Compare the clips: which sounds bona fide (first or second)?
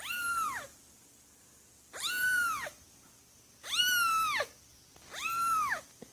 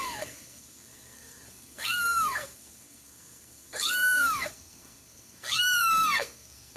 first